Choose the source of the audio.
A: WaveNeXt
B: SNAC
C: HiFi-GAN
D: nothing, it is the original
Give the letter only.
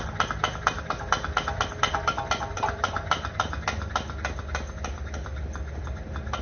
D